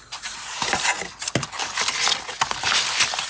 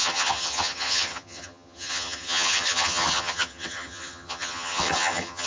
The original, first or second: first